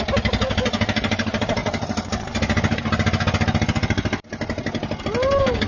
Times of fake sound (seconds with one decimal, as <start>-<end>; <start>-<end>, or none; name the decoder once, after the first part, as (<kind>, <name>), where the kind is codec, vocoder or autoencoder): none